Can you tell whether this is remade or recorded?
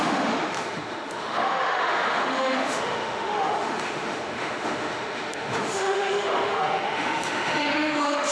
remade